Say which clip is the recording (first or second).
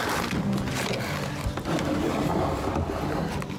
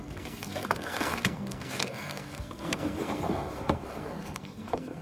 first